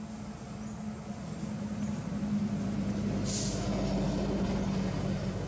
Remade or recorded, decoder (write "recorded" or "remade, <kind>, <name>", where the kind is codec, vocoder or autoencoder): recorded